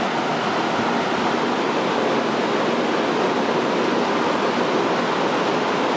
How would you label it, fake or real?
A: real